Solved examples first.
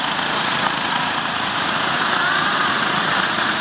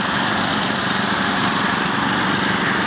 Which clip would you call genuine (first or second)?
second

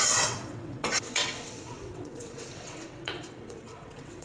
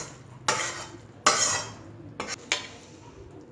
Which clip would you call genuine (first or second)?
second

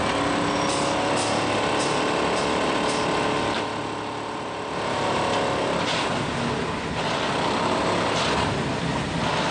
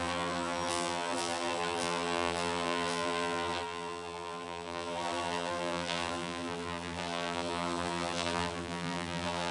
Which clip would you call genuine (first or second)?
first